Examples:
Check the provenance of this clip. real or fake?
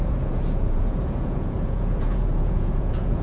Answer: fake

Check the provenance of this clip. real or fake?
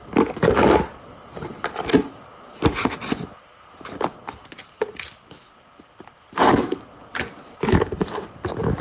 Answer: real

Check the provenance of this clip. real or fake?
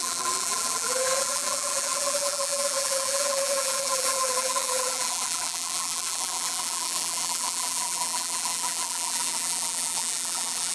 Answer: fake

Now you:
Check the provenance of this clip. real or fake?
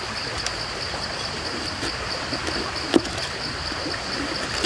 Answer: real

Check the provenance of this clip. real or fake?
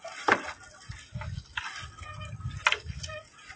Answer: real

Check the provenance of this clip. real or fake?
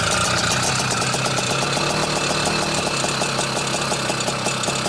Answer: real